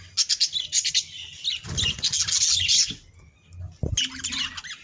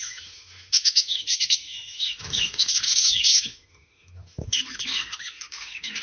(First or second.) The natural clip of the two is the first